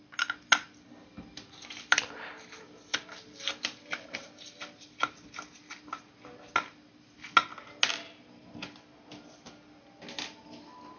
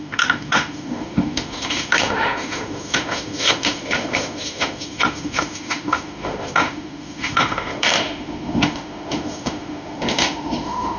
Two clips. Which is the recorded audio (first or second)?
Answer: first